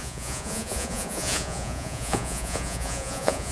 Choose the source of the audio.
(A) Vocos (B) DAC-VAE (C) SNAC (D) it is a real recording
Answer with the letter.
A